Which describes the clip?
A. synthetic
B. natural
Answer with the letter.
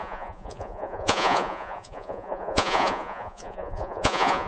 A